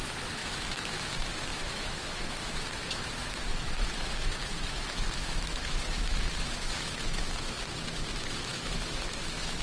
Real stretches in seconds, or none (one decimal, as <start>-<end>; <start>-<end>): none